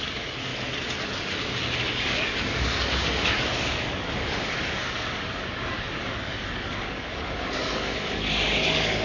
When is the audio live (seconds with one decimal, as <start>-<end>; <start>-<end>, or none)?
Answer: 0.5-1.8